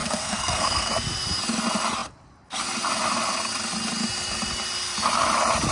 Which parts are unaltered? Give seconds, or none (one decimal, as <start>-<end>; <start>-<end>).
0.9-5.7